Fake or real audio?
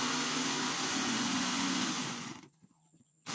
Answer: fake